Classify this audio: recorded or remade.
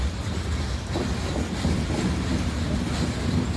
recorded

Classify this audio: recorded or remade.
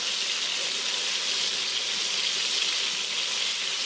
recorded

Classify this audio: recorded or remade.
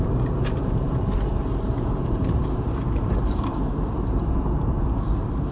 remade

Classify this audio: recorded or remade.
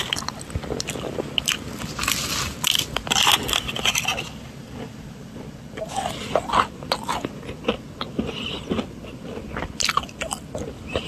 recorded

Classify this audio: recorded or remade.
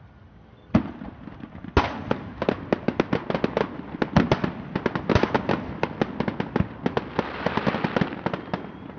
recorded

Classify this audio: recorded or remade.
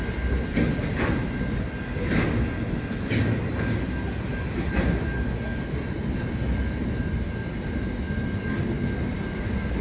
recorded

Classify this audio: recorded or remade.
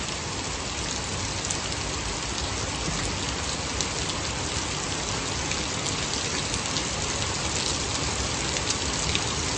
recorded